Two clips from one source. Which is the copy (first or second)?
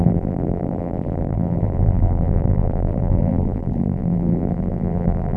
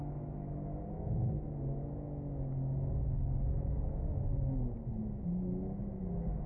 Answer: first